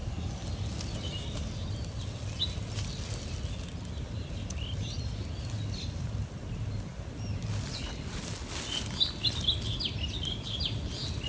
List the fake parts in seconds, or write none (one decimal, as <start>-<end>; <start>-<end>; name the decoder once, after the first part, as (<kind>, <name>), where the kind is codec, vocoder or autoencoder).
none